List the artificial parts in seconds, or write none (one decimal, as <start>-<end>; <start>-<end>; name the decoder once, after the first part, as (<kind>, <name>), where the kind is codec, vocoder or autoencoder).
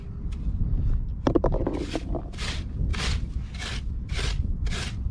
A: 1.1-2.0 (vocoder, BigVGAN v2)